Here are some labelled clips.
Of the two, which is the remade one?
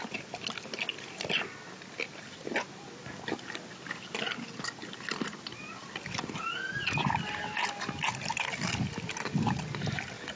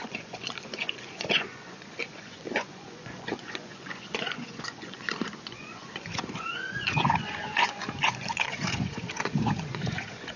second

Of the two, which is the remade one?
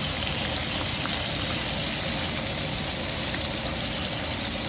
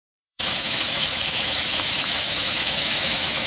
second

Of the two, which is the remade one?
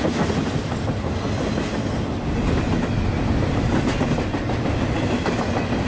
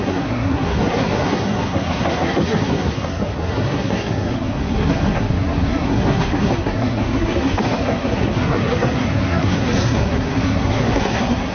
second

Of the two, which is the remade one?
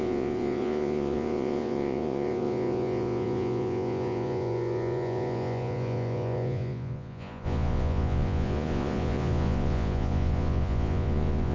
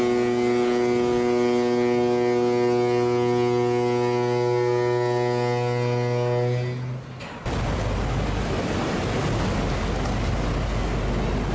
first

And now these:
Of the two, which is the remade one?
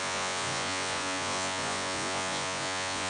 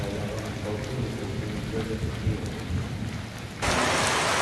first